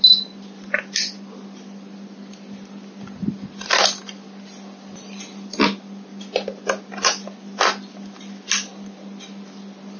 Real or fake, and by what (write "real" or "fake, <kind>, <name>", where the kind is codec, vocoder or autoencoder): real